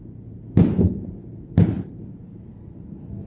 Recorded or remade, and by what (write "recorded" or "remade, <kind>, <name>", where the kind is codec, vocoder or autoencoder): recorded